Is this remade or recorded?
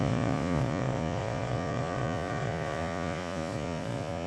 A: remade